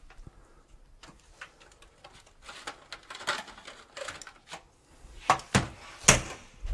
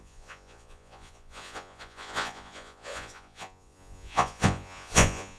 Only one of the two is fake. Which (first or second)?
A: second